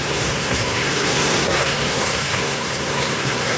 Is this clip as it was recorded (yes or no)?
no